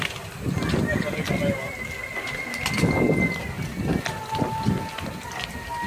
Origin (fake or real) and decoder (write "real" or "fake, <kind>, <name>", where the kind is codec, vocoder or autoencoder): real